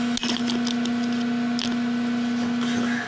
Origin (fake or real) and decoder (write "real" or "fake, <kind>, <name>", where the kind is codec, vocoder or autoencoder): real